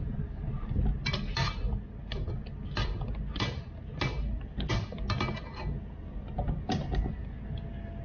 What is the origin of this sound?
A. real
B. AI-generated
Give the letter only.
A